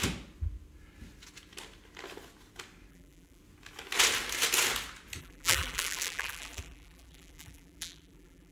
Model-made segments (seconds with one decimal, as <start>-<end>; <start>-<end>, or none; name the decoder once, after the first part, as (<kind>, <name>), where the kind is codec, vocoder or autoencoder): 2.9-3.4 (vocoder, BigVGAN v2); 5.2-8.5